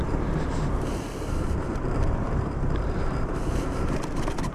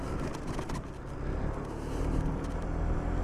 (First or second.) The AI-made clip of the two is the first